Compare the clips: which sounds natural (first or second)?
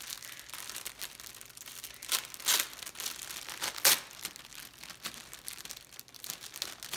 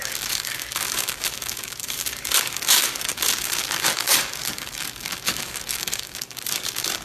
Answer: first